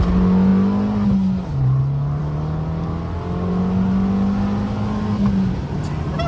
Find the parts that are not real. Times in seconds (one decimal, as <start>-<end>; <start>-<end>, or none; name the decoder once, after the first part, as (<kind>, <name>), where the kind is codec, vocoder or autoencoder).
none